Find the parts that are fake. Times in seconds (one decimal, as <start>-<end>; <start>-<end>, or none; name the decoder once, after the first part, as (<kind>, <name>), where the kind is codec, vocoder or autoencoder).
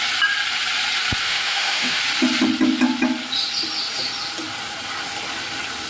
1.2-2.0 (autoencoder, DAC-VAE)